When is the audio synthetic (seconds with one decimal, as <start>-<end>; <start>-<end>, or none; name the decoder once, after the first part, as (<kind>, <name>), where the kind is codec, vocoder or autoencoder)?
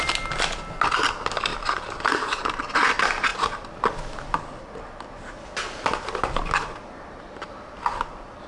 1.5-2.4 (vocoder, BigVGAN v2)